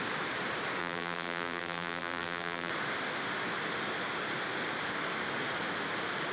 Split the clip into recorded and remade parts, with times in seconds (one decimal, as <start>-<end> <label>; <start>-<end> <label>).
0.0-0.8 recorded; 0.8-2.7 remade; 2.7-6.3 recorded